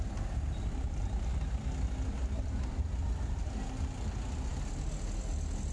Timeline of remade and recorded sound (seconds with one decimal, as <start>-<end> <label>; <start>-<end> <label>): 0.0-5.7 recorded